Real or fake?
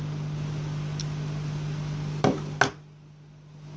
real